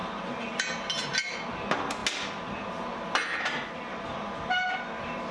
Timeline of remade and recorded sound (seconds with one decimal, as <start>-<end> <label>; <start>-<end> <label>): 0.0-5.3 recorded